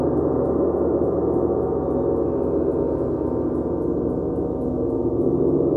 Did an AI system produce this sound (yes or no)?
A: no